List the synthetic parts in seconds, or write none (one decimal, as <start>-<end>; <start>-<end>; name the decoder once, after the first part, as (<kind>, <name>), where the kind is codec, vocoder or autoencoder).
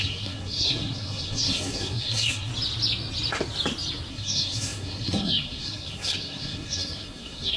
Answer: 0.0-2.5 (codec, SNAC); 4.1-7.6